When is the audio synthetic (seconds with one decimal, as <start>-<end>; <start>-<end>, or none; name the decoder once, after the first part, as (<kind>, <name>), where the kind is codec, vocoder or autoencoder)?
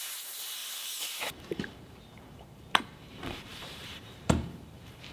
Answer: 0.0-5.1 (vocoder, BigVGAN v2)